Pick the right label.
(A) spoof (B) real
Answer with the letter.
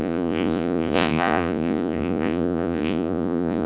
A